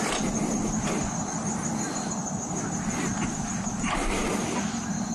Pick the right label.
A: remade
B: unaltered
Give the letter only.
B